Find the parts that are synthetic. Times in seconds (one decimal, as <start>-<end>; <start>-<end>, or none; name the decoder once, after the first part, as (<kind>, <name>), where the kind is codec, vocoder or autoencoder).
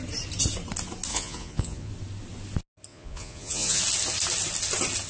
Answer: 1.1-1.9 (vocoder, Vocos); 2.9-3.8